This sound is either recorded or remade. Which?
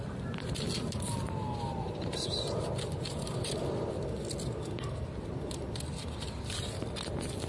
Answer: recorded